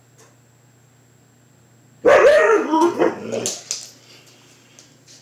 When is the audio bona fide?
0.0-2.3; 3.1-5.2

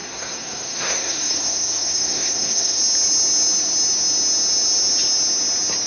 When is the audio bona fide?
2.8-5.9

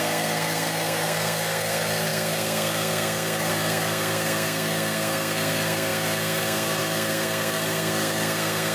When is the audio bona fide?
none

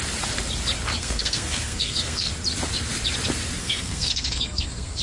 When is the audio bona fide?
0.0-1.0; 2.3-3.6

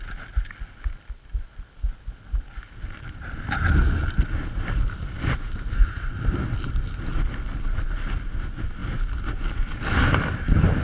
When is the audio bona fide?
0.0-10.8

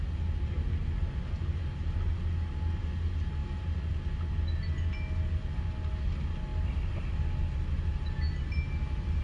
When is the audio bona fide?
0.0-9.2